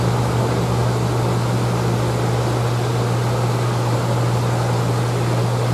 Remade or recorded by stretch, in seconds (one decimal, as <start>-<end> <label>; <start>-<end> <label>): 0.0-5.7 recorded